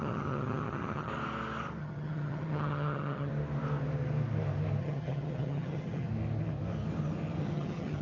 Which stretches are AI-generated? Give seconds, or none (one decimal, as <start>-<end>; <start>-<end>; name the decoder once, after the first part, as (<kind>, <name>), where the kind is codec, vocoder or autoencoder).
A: 0.0-1.1 (vocoder, HiFi-GAN); 1.8-3.3; 4.8-6.1; 7.4-8.0